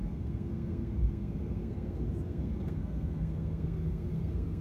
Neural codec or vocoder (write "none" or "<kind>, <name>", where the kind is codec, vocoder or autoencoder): codec, SNAC